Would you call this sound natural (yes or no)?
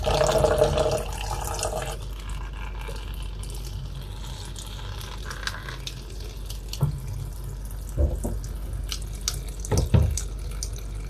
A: yes